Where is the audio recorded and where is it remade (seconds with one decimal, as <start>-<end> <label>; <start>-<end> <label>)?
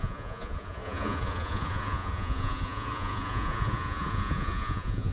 0.0-5.1 remade